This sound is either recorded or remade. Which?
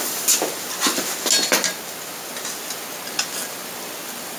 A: recorded